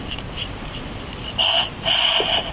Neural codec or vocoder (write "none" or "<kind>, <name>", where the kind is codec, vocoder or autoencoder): none